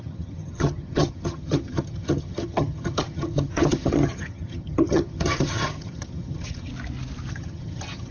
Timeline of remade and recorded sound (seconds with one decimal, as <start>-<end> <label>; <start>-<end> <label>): 0.0-6.7 remade; 6.7-7.3 recorded; 7.3-8.1 remade